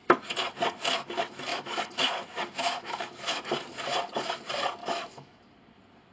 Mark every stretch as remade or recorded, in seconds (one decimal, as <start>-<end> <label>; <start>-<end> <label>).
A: 0.0-1.5 recorded; 1.5-3.4 remade; 3.4-4.8 recorded; 4.8-5.4 remade; 5.4-6.1 recorded